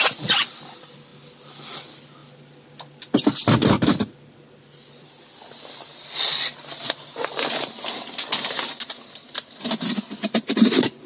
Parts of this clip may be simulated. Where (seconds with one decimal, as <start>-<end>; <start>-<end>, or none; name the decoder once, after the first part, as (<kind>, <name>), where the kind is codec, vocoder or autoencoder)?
none